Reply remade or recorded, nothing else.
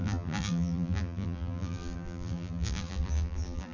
remade